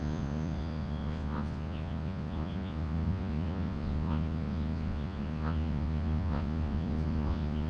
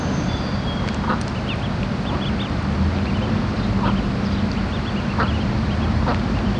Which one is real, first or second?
second